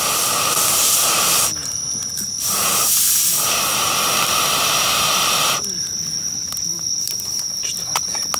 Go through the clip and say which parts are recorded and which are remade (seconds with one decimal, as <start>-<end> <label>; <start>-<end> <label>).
0.0-8.4 recorded